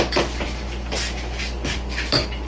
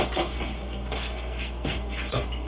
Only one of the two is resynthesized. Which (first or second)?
second